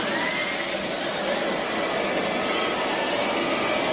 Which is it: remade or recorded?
recorded